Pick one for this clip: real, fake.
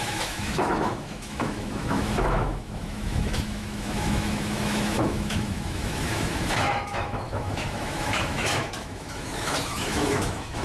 fake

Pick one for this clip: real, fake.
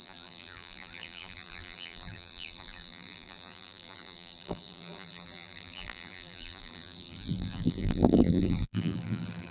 fake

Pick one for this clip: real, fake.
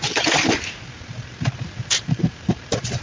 fake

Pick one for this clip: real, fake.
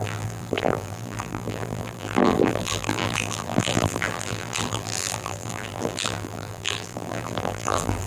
fake